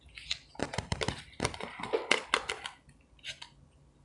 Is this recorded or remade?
recorded